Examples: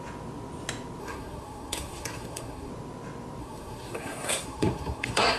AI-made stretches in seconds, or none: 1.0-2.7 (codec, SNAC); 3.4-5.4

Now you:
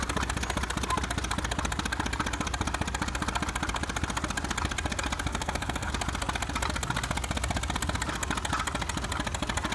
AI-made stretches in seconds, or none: 5.3-5.9 (codec, SNAC)

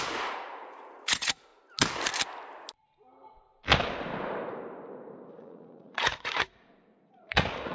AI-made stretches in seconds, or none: 0.0-1.5 (vocoder, Vocos); 5.3-7.7

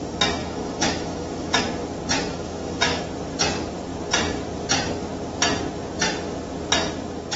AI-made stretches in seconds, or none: 0.4-1.6 (autoencoder, DAC-VAE); 2.3-3.0

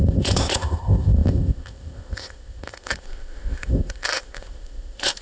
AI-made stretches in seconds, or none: 0.0-5.2 (codec, ZipCodec)